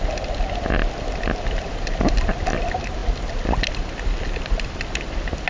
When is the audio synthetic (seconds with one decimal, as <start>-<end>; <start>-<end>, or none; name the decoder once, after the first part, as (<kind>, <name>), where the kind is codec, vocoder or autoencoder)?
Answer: none